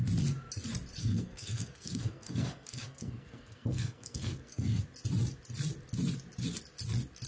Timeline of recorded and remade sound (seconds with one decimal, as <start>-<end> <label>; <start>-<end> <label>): 0.0-1.0 recorded; 1.0-4.8 remade; 4.8-7.3 recorded